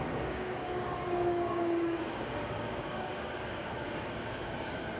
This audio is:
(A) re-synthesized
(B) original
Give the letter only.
A